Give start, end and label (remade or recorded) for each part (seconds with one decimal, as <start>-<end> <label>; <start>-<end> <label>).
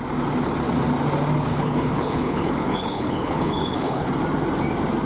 0.0-1.5 recorded; 1.5-4.1 remade; 4.1-5.1 recorded